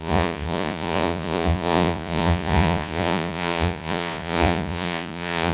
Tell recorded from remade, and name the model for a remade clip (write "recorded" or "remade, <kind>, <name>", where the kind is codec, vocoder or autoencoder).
remade, vocoder, Vocos